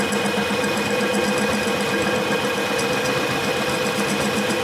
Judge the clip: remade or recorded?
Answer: recorded